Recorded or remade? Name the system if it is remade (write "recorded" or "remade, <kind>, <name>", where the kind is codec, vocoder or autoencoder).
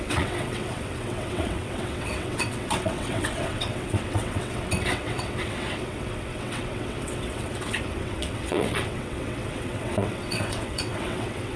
remade, vocoder, WaveNeXt